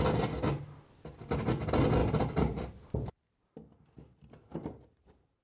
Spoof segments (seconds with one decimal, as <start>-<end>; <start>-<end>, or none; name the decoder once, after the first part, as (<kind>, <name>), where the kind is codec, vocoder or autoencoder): 2.0-5.4 (vocoder, BigVGAN v2)